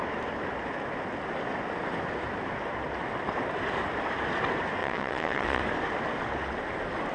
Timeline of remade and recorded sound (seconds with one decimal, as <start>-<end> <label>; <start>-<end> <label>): 0.0-4.8 recorded; 4.8-5.6 remade; 5.6-7.1 recorded